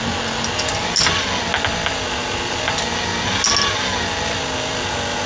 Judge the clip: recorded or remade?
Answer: recorded